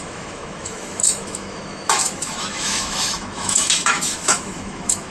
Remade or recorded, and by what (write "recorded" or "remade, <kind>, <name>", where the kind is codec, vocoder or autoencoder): remade, autoencoder, DAC-VAE